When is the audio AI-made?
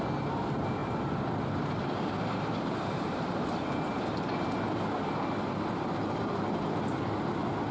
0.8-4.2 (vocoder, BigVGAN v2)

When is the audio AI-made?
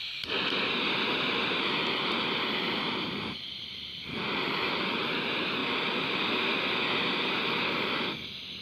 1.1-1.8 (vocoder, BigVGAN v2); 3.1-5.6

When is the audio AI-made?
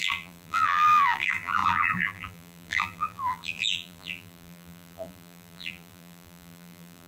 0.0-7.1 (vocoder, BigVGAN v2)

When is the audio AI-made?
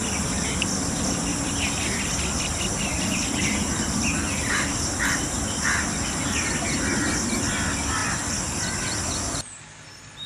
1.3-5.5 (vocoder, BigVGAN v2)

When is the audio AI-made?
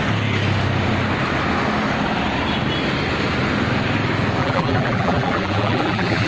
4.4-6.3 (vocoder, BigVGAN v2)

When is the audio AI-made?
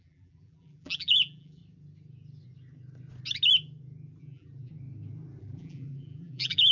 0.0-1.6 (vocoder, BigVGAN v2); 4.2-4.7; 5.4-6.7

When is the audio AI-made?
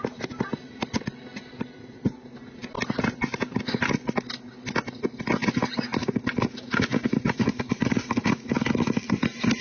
6.9-8.3 (vocoder, BigVGAN v2)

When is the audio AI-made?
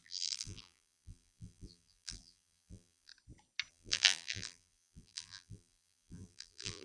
0.0-3.1 (vocoder, BigVGAN v2); 3.7-6.8